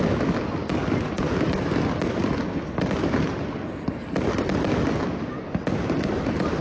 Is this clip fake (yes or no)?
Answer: no